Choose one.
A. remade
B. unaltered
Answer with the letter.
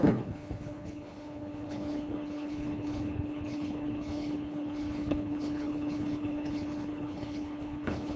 A